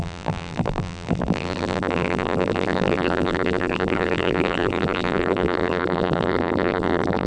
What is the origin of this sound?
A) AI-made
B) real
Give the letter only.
A